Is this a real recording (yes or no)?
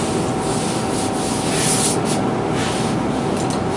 yes